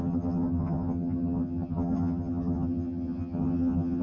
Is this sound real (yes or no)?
no